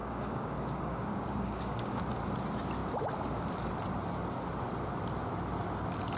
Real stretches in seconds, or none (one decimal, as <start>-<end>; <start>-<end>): 2.0-6.2